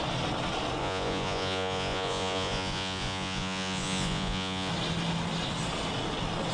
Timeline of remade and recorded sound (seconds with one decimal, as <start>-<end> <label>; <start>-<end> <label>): 0.0-0.8 recorded; 0.8-4.7 remade; 4.7-6.5 recorded